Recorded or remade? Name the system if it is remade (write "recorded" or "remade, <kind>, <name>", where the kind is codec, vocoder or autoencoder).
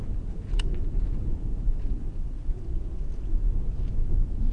remade, vocoder, Vocos